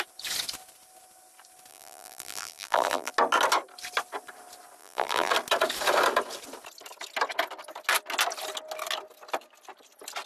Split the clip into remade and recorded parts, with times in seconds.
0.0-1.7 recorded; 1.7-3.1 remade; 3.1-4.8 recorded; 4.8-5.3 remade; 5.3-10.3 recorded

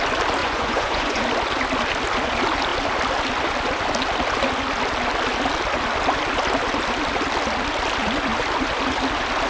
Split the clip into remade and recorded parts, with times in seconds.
0.0-0.4 recorded; 0.4-1.2 remade; 1.2-9.5 recorded

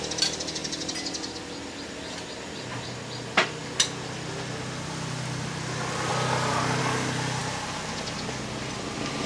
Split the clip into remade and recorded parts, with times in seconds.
0.0-9.3 recorded

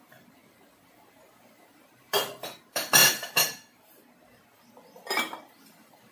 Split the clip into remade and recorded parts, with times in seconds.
0.0-3.0 remade; 3.0-5.5 recorded; 5.5-6.1 remade

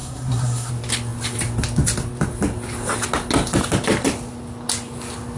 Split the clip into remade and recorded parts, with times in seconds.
0.0-0.7 remade; 0.7-5.4 recorded

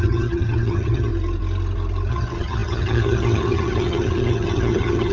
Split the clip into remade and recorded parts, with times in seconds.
0.0-1.1 remade; 1.1-2.1 recorded; 2.1-5.1 remade

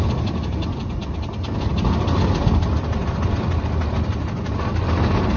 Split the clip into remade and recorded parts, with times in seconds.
0.0-5.4 recorded